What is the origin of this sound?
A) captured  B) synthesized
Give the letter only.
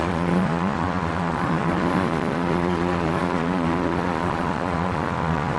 B